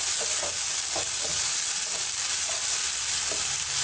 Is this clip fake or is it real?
real